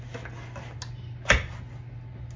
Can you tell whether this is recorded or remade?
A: recorded